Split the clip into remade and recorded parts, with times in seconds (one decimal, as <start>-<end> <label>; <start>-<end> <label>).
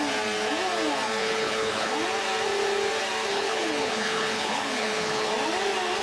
0.0-1.2 recorded; 1.2-1.9 remade; 1.9-3.3 recorded; 3.3-5.3 remade; 5.3-6.0 recorded